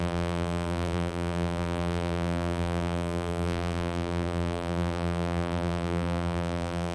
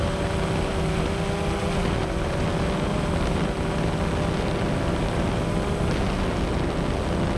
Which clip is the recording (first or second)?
second